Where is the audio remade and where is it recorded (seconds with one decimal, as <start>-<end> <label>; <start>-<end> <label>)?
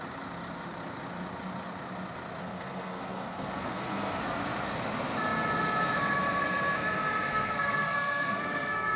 0.0-2.4 recorded; 2.4-4.2 remade; 4.2-7.3 recorded; 7.3-9.0 remade